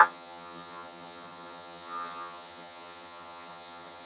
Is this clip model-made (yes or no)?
yes